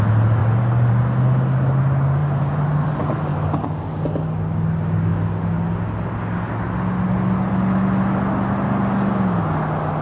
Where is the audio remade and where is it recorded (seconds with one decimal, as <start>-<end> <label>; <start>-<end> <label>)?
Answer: 0.0-0.4 recorded; 0.4-1.0 remade; 1.0-2.2 recorded; 2.2-2.9 remade; 2.9-10.0 recorded

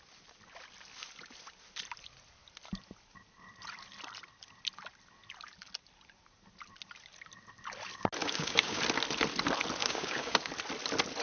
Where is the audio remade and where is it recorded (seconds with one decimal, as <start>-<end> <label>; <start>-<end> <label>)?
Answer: 0.0-8.2 recorded; 8.2-8.8 remade; 8.8-9.8 recorded; 9.8-10.5 remade; 10.5-11.2 recorded

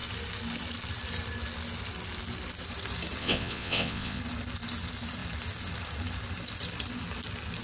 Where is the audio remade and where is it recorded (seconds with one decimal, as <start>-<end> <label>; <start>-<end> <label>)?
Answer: 0.0-3.2 recorded; 3.2-4.2 remade; 4.2-7.6 recorded

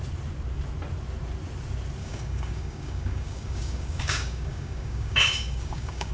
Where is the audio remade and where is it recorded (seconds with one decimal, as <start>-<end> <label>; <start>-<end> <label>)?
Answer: 0.0-2.0 recorded; 2.0-6.1 remade

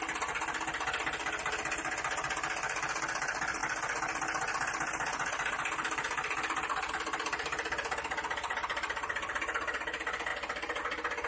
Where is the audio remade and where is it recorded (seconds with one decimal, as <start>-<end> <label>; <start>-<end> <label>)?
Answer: 0.0-8.7 recorded; 8.7-9.4 remade; 9.4-10.3 recorded; 10.3-10.8 remade; 10.8-11.3 recorded

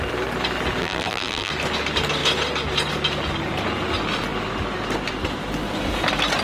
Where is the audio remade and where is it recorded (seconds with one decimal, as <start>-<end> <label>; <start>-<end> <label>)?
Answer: 0.0-0.8 recorded; 0.8-1.5 remade; 1.5-6.4 recorded